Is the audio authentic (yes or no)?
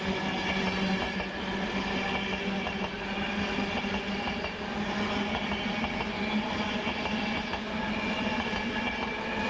yes